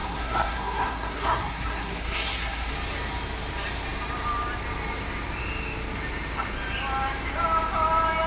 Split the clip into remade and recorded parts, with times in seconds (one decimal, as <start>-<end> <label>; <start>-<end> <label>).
0.0-2.7 remade; 2.7-8.3 recorded